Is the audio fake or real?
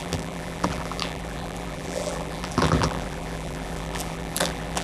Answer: fake